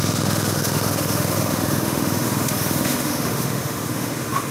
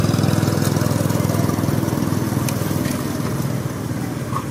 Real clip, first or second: second